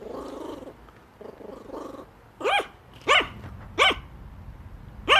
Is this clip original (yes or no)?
yes